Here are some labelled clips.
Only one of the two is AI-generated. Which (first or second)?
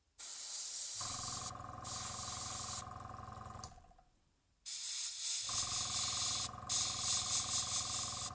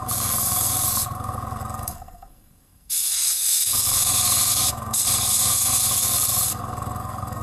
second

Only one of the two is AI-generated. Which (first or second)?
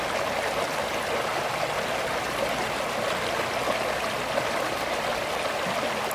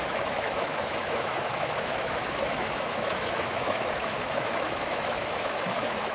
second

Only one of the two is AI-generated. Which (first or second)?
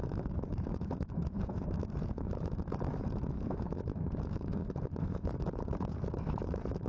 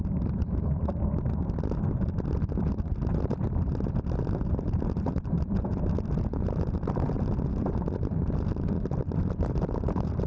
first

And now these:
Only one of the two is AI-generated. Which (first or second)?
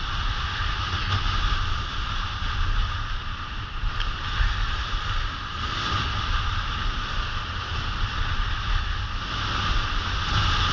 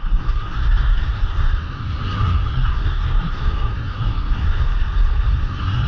second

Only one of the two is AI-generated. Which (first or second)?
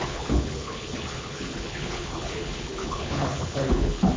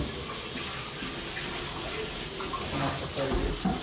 first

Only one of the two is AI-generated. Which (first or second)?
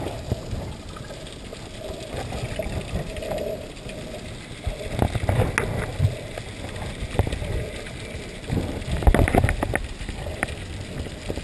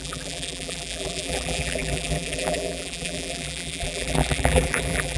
second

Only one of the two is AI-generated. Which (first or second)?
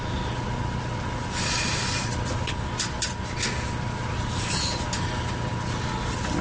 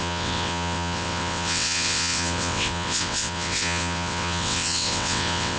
second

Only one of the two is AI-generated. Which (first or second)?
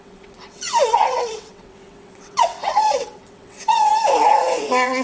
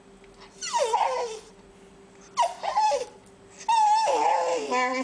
first